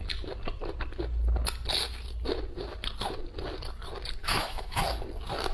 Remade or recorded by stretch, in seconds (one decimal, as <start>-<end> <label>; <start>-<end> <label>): 0.0-4.2 recorded; 4.2-4.8 remade; 4.8-5.5 recorded